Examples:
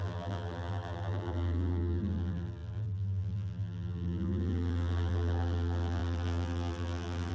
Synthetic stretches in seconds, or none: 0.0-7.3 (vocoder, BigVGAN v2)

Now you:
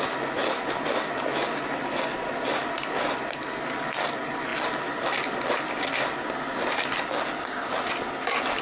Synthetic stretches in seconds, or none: none

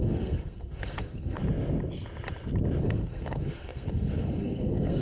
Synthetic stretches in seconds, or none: 0.0-1.4 (codec, SNAC); 2.8-5.0

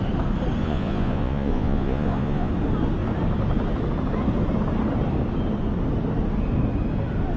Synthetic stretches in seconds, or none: 0.6-2.5 (vocoder, Vocos)

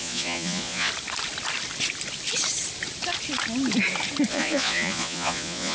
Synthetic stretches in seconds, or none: 0.0-0.9 (vocoder, Vocos); 4.3-5.7

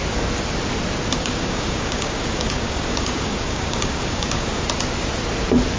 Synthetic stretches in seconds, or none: 1.2-4.6 (codec, DAC)

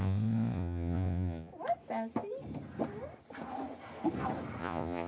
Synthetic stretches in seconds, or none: 0.0-1.5 (vocoder, Vocos); 4.6-5.1